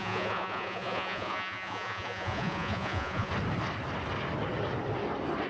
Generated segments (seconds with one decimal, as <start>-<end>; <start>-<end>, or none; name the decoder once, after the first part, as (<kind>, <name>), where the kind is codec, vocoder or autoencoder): 0.0-3.3 (vocoder, Vocos)